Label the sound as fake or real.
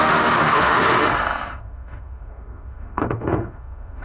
fake